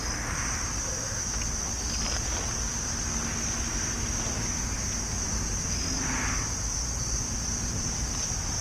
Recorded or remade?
recorded